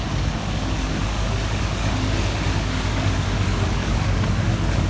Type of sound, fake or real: fake